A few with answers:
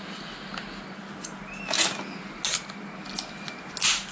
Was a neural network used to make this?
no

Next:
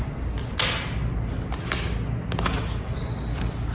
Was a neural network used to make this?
no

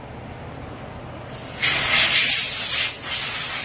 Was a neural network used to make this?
no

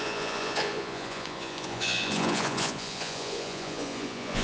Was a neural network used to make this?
yes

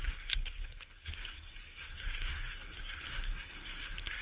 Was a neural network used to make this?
yes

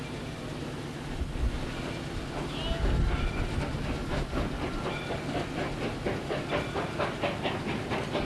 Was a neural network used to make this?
no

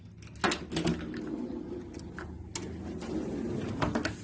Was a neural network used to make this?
no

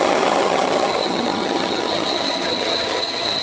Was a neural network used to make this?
yes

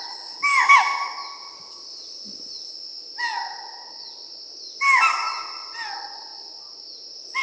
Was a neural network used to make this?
no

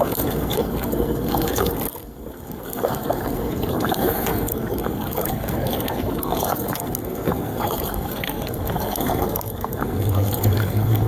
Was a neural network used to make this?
yes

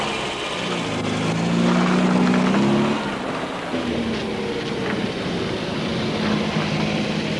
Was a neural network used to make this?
no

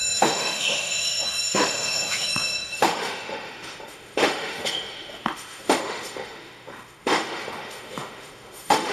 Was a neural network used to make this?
yes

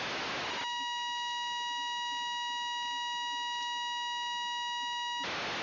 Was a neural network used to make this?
no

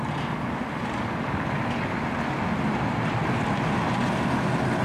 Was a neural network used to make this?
no